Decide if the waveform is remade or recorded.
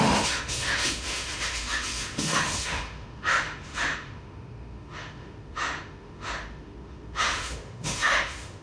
remade